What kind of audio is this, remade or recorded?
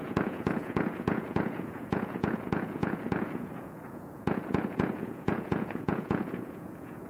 remade